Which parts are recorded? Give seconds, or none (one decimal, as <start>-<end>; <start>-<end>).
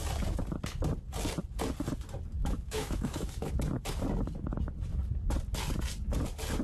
0.0-2.4; 3.5-6.6